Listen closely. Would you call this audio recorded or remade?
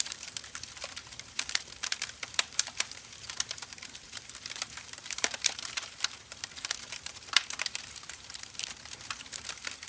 remade